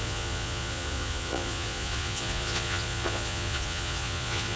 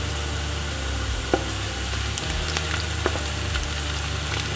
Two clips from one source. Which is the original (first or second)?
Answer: second